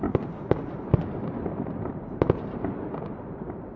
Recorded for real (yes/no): no